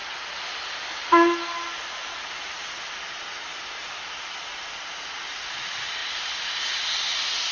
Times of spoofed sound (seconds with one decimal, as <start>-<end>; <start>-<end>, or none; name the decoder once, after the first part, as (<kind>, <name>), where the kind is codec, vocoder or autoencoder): none